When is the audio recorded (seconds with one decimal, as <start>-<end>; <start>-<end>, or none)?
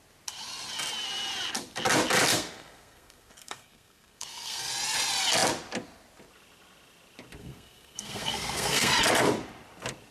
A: 0.0-2.3; 4.7-7.4; 8.9-10.1